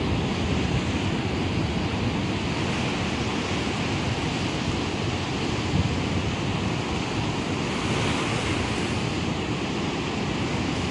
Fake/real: real